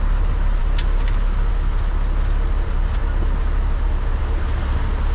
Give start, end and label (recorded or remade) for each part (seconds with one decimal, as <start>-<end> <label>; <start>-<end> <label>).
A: 0.0-5.1 recorded